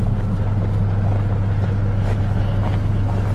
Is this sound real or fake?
real